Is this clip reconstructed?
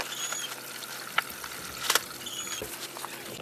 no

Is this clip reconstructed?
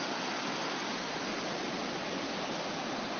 no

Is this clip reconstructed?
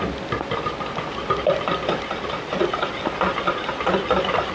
no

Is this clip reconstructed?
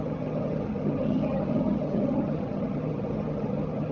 yes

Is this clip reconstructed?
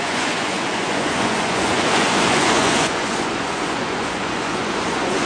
yes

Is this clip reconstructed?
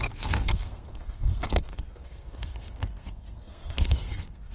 yes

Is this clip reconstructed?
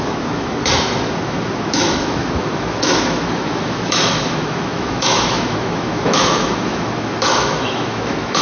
yes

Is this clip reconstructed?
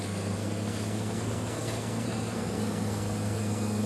yes